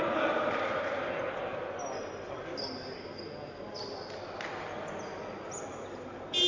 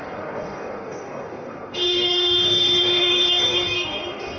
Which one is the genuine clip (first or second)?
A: first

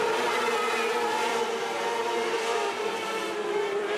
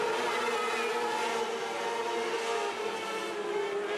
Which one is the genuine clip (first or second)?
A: second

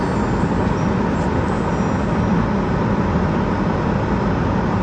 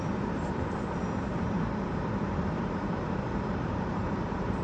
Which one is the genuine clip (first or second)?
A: first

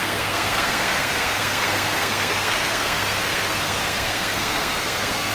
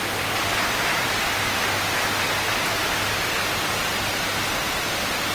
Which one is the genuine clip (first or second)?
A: second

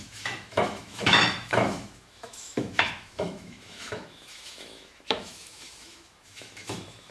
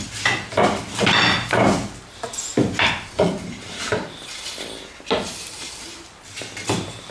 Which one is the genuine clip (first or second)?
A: second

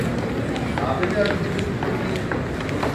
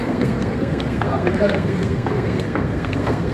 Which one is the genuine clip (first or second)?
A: first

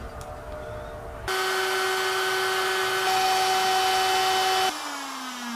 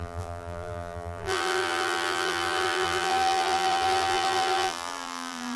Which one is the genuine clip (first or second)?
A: first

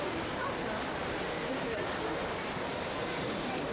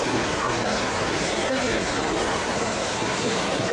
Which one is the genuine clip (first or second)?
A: first